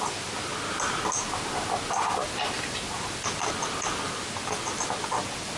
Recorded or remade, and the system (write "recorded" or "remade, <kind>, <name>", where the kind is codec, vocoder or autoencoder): recorded